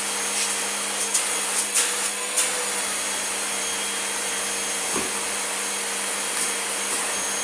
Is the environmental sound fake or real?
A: real